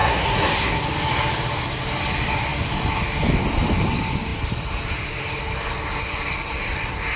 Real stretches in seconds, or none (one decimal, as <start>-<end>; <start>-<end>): 0.8-7.2